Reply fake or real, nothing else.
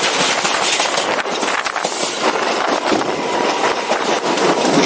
real